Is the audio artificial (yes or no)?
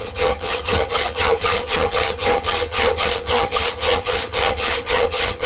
yes